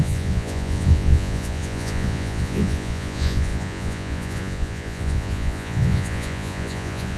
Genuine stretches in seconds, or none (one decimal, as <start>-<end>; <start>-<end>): none